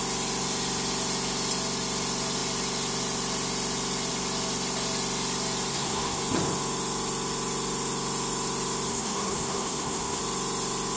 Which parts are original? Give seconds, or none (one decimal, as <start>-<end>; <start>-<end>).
0.0-5.7; 6.2-8.9; 10.2-11.0

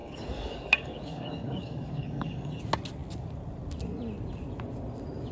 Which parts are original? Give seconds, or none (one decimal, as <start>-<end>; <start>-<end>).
2.6-5.3

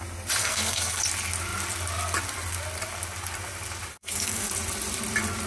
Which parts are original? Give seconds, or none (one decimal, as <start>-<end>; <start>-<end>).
0.0-0.4; 1.0-3.9; 4.5-5.5

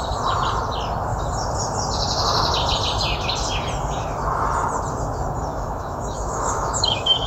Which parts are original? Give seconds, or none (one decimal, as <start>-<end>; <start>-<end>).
0.0-5.5

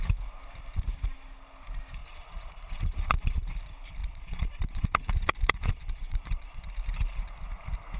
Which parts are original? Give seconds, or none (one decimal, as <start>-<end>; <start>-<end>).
0.0-2.0; 3.4-4.0; 6.6-8.0

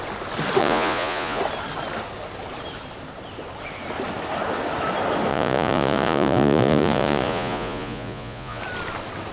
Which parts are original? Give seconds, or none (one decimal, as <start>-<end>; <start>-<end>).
0.0-0.6; 1.4-5.3; 8.6-9.3

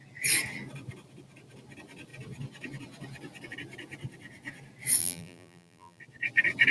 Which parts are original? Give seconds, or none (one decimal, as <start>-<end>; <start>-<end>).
0.0-5.0; 6.0-6.7